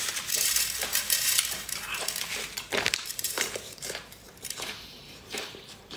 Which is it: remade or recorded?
remade